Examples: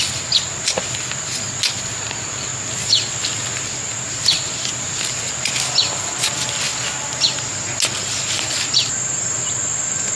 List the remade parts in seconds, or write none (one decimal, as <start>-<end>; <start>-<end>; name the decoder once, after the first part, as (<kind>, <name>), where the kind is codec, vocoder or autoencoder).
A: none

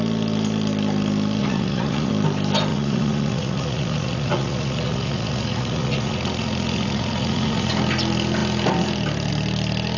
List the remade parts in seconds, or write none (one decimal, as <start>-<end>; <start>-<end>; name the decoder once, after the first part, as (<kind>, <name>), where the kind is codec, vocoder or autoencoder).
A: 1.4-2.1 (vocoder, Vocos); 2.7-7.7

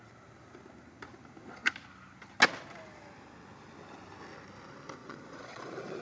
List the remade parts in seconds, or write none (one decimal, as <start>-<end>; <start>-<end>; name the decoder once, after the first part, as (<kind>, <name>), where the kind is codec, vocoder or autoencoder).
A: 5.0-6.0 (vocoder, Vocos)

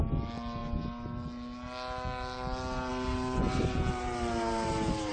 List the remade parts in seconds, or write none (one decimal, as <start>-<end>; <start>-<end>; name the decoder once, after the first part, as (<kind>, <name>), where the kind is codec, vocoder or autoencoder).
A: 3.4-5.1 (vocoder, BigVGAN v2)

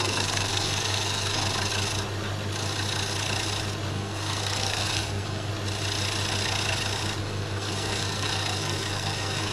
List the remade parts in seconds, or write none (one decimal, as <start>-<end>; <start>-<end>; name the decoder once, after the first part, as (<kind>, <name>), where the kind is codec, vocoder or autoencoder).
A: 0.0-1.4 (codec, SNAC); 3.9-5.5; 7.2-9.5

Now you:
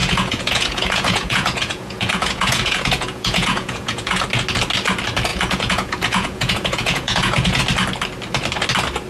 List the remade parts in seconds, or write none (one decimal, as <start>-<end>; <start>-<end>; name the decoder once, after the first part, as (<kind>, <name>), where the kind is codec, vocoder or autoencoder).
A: 0.0-4.2 (vocoder, Vocos); 5.3-7.6

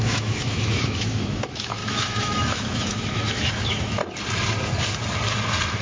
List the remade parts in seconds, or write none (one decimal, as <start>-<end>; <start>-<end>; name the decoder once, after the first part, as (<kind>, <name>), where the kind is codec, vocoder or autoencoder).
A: 0.0-4.0 (autoencoder, DAC-VAE)

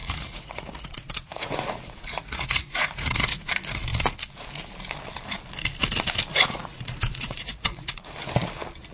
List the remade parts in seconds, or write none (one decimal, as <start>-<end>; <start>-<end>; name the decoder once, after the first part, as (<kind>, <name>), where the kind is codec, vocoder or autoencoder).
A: 0.0-3.5 (vocoder, Vocos); 6.3-8.1